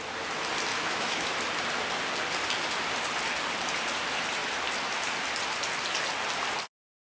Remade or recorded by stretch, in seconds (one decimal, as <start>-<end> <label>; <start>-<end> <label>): 0.0-0.7 recorded; 0.7-1.3 remade; 1.3-7.0 recorded